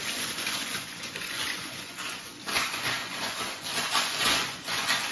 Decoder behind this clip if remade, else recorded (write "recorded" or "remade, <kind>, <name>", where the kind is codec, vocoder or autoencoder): remade, vocoder, Vocos